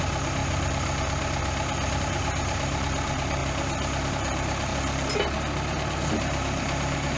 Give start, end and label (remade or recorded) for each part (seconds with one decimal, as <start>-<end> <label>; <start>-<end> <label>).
0.0-0.4 remade; 0.4-2.0 recorded; 2.0-3.4 remade; 3.4-4.1 recorded; 4.1-4.7 remade; 4.7-6.1 recorded; 6.1-7.2 remade